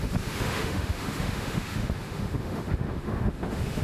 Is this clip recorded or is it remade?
remade